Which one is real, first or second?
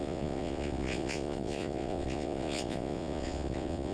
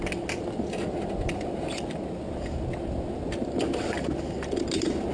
second